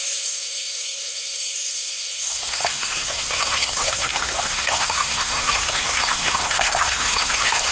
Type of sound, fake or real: fake